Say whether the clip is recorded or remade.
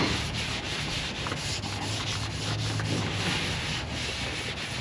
recorded